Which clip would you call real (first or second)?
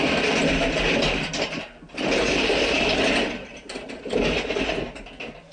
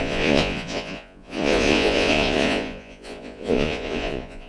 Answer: first